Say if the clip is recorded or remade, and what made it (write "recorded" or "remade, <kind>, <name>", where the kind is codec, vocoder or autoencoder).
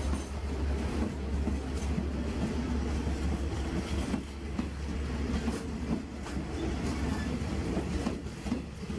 recorded